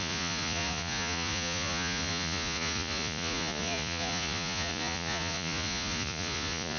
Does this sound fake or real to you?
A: fake